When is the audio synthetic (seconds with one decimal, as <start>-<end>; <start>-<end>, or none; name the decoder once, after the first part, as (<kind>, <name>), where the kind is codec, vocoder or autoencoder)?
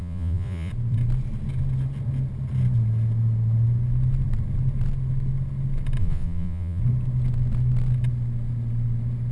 0.0-0.7 (vocoder, Vocos); 6.0-6.8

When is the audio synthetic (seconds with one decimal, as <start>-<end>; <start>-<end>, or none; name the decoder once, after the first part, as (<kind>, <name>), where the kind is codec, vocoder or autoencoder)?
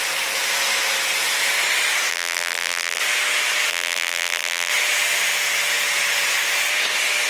2.1-3.0 (vocoder, BigVGAN v2); 3.7-4.7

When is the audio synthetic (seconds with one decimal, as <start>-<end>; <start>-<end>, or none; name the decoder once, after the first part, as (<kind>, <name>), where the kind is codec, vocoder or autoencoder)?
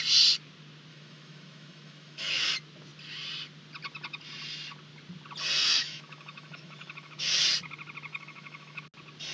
0.9-2.5 (autoencoder, DAC-VAE); 5.6-7.2; 8.1-8.8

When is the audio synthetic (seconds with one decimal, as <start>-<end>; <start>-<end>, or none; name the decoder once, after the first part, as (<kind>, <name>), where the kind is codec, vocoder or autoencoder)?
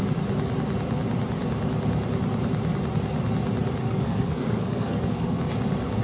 3.8-5.4 (codec, SNAC)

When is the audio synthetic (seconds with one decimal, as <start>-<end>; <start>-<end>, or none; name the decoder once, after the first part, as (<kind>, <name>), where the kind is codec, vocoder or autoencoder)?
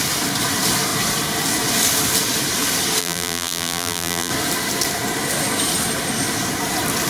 3.0-4.3 (vocoder, BigVGAN v2)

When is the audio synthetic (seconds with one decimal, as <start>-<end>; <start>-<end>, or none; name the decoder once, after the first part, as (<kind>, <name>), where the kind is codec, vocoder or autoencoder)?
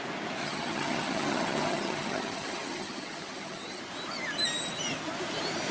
0.4-3.8 (vocoder, HiFi-GAN)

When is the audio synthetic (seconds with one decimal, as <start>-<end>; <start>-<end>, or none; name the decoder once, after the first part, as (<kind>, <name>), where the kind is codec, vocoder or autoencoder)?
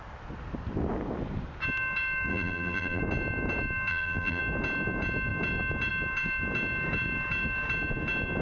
2.3-3.0 (vocoder, BigVGAN v2); 3.9-4.4